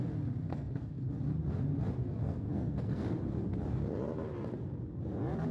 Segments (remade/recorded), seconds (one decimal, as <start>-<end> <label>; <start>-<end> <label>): 0.0-0.5 recorded; 0.5-1.1 remade; 1.1-2.2 recorded; 2.2-3.2 remade; 3.2-5.5 recorded

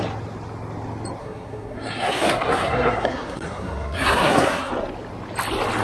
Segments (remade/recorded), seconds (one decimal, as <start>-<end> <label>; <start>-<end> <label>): 0.0-1.2 recorded; 1.2-4.7 remade; 4.7-5.8 recorded

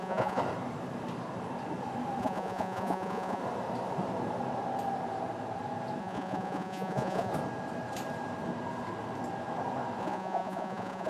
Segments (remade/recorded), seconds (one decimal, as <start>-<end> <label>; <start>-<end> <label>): 0.0-0.4 remade; 0.4-2.2 recorded; 2.2-3.4 remade; 3.4-6.0 recorded; 6.0-7.3 remade; 7.3-10.0 recorded; 10.0-11.1 remade

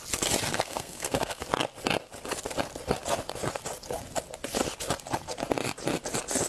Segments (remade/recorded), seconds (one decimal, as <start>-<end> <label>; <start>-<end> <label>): 0.0-0.5 recorded; 0.5-1.4 remade; 1.4-6.5 recorded